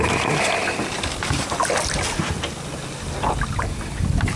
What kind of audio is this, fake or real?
real